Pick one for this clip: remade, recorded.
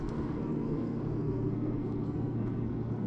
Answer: remade